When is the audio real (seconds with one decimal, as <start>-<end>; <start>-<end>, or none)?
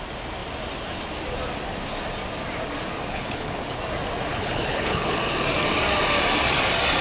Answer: 0.0-3.1; 3.8-4.3; 5.2-7.0